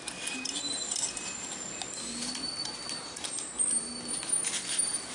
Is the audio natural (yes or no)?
yes